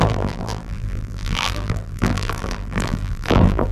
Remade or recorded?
remade